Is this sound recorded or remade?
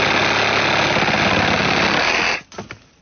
recorded